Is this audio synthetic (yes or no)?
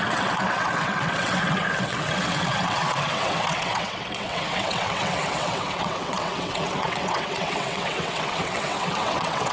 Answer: yes